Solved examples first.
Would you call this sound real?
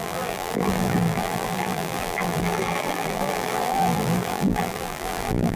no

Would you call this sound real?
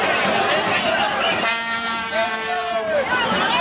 no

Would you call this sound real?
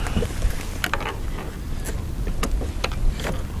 yes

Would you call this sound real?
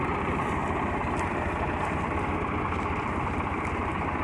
no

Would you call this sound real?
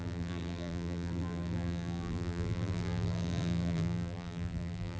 no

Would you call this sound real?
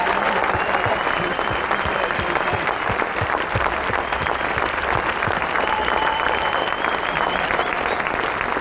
no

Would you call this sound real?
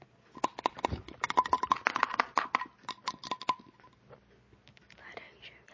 yes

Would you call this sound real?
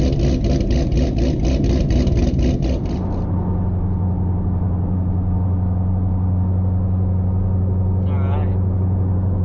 yes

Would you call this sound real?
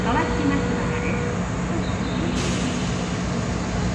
yes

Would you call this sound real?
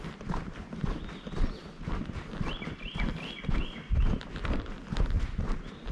yes